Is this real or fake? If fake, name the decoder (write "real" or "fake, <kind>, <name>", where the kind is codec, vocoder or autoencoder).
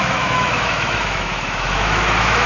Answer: fake, autoencoder, DAC-VAE